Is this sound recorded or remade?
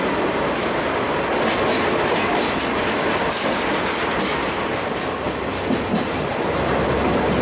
recorded